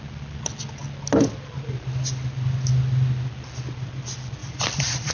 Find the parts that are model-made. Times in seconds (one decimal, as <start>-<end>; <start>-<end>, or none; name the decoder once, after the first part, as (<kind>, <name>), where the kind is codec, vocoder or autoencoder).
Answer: 4.4-5.1 (vocoder, BigVGAN v2)